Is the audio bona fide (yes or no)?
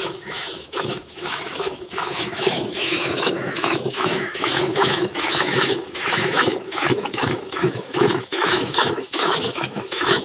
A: no